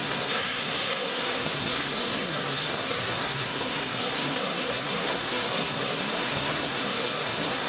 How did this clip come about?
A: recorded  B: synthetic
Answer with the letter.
B